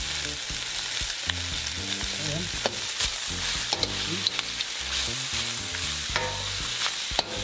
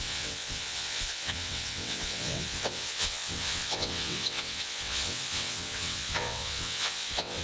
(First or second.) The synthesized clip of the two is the second